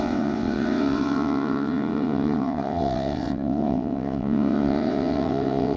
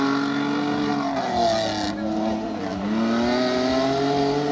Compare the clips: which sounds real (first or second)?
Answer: second